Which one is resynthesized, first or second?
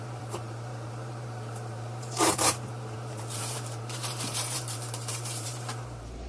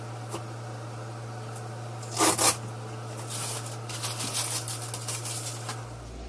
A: first